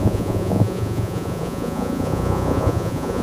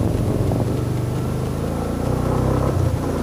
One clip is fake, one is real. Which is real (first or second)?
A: second